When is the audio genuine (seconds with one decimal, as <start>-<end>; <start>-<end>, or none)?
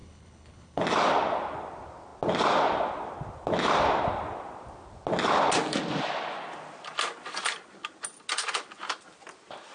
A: 0.8-9.7